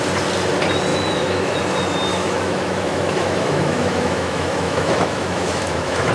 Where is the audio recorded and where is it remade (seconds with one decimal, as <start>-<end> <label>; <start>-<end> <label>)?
0.0-0.9 recorded; 0.9-1.6 remade; 1.6-2.1 recorded; 2.1-6.1 remade